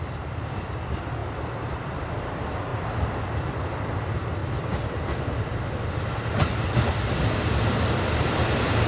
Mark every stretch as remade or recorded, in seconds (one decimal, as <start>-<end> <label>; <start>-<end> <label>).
0.0-2.7 remade; 2.7-3.4 recorded; 3.4-4.4 remade; 4.4-7.5 recorded; 7.5-8.9 remade